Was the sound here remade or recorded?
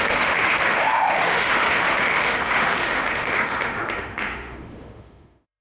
remade